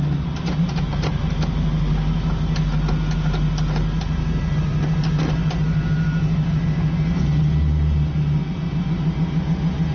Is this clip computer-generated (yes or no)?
no